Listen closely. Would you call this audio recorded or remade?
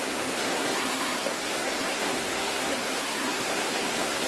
remade